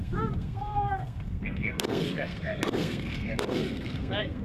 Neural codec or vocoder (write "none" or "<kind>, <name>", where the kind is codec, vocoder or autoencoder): codec, SNAC